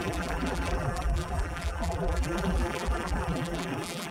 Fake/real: fake